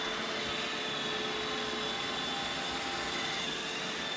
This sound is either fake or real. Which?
real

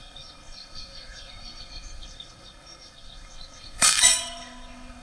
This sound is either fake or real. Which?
fake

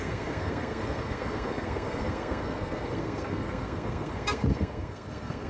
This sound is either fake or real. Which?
fake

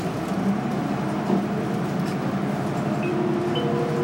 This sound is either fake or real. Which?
real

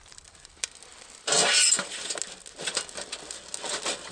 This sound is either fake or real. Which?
real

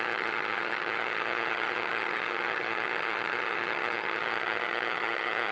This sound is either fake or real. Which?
fake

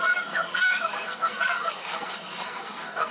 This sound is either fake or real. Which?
fake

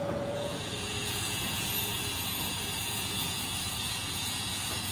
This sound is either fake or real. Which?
fake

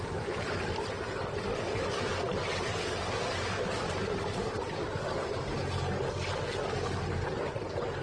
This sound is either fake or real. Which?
real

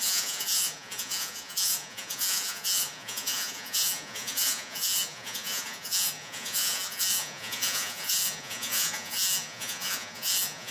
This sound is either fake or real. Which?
fake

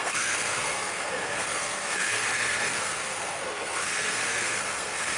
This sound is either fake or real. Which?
fake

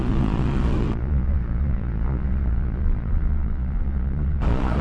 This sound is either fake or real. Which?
fake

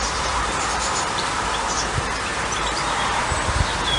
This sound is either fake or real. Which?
fake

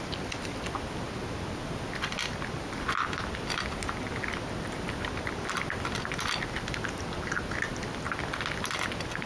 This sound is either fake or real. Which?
real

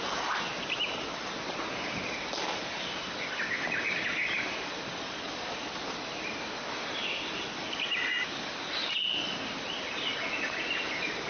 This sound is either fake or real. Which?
real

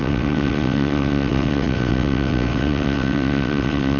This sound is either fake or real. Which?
fake